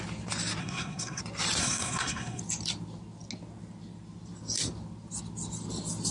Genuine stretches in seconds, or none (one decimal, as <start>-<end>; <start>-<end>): 0.0-0.6; 1.2-1.6; 2.4-6.1